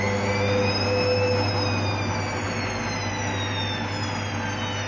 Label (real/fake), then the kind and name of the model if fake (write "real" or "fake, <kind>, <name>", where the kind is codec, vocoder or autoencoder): real